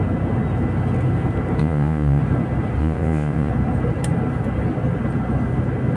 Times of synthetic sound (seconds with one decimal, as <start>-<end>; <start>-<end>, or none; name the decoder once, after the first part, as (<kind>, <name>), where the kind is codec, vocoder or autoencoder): 1.6-2.2 (vocoder, Vocos); 2.8-3.5